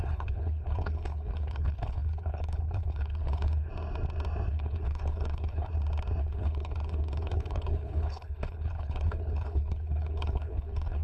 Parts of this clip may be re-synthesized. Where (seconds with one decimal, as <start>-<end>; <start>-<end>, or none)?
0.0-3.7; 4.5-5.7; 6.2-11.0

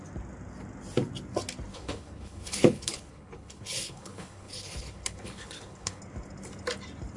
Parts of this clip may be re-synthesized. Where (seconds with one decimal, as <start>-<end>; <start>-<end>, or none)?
1.7-6.0

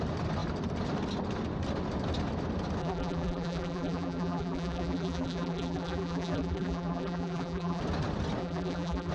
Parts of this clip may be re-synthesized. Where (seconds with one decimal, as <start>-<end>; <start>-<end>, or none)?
2.8-7.8; 8.4-9.1

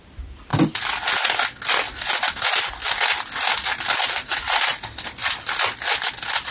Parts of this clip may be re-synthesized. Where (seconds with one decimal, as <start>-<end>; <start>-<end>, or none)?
0.0-0.5; 2.1-2.8; 4.0-5.2

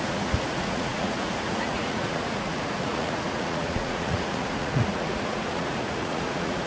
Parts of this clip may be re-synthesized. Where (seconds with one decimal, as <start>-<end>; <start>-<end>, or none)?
0.0-6.7

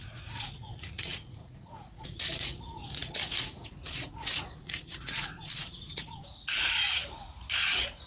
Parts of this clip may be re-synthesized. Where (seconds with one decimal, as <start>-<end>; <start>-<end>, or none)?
0.0-8.1

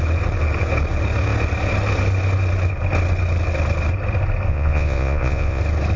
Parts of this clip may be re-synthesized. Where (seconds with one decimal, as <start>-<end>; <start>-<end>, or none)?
4.5-5.6